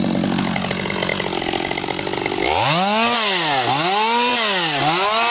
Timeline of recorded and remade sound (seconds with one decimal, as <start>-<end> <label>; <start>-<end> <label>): 0.0-5.3 recorded